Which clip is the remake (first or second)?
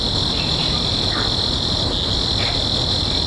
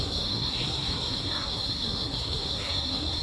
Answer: second